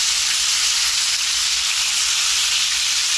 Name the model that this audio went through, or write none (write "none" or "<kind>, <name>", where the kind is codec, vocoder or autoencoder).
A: none